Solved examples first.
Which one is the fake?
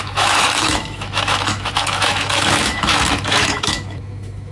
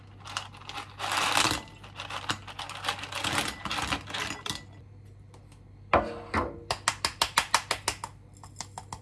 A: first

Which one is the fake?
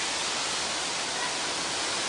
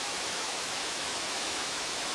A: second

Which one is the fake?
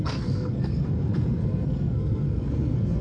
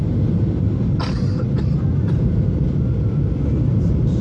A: first